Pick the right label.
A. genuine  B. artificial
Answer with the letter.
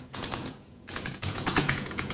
B